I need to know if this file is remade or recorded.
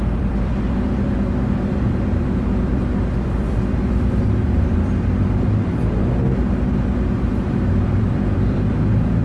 remade